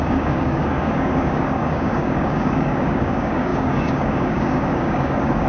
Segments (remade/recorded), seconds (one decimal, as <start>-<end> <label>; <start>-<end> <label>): 0.0-5.5 remade